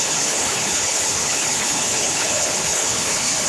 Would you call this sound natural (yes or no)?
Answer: no